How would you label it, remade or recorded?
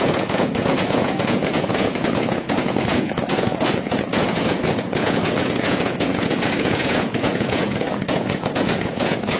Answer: remade